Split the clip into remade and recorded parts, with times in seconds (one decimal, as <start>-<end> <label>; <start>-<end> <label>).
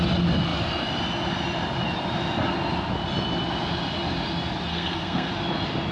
0.0-4.7 recorded; 4.7-5.3 remade; 5.3-5.9 recorded